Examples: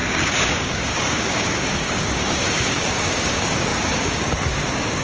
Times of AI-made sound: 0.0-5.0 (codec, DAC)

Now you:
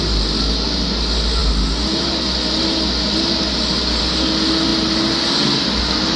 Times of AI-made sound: none

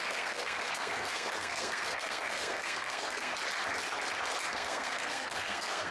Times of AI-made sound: 0.0-3.3 (codec, SNAC); 4.5-5.9

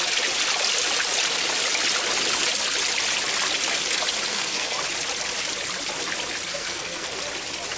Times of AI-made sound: 4.3-4.8 (codec, SNAC); 6.5-7.2